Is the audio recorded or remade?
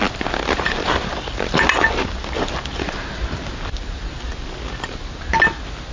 recorded